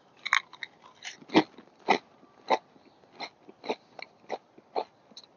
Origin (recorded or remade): recorded